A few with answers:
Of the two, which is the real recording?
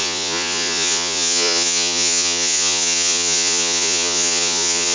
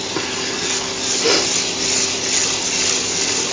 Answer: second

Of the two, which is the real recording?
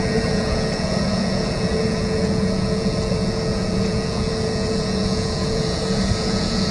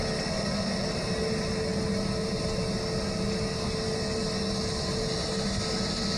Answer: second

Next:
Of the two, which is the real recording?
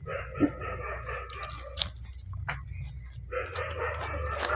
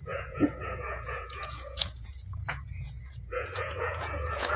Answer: first